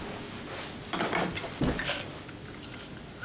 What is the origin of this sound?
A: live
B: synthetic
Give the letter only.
A